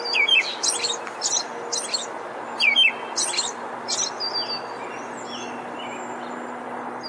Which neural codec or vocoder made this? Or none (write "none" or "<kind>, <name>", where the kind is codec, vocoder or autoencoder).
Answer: none